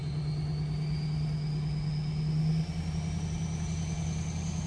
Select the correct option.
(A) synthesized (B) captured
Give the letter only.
B